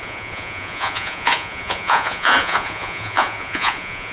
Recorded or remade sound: remade